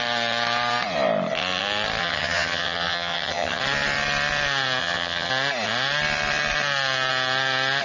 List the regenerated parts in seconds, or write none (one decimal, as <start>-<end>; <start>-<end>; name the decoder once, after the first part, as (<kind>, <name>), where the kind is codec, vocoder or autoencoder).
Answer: 2.0-3.6 (vocoder, HiFi-GAN); 4.8-5.3